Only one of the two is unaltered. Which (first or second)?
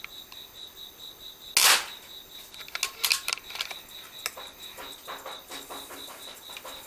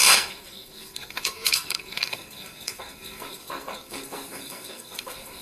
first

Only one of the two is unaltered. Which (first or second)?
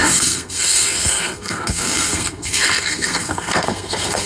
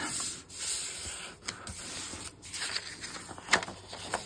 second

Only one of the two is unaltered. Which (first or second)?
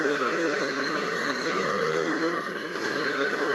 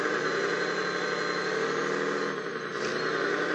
second